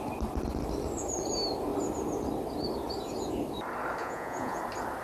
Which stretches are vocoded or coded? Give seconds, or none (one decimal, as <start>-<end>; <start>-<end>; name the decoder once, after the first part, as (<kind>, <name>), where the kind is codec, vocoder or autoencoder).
4.0-4.6 (vocoder, Vocos)